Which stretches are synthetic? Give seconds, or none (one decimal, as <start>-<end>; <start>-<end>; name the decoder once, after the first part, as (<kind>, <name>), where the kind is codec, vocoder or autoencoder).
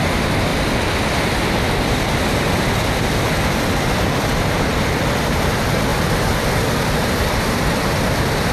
5.9-8.5 (vocoder, BigVGAN v2)